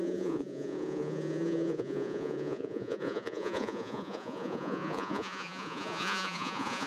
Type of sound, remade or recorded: remade